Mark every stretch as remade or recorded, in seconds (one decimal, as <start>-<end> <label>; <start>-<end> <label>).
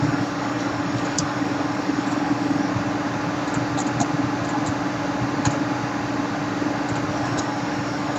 0.0-2.7 remade; 2.7-7.1 recorded; 7.1-8.2 remade